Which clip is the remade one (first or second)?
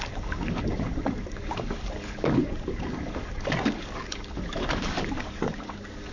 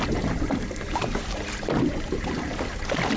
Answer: first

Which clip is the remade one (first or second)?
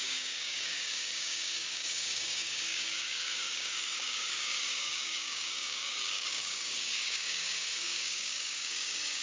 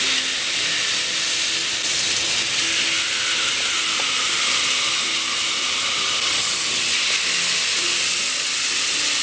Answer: first